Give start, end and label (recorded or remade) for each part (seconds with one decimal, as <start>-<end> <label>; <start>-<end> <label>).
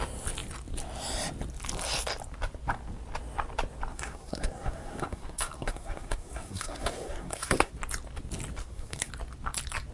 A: 0.0-3.9 recorded; 3.9-7.7 remade; 7.7-8.6 recorded; 8.6-9.1 remade; 9.1-9.9 recorded